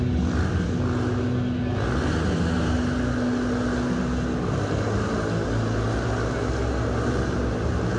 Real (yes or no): yes